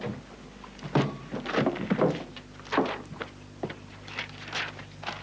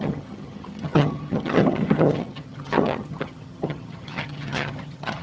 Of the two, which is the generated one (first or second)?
second